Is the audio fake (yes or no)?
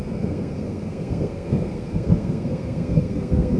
yes